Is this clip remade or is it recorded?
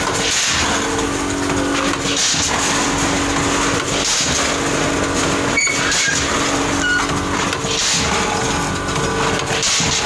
recorded